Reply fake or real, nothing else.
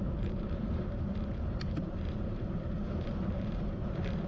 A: fake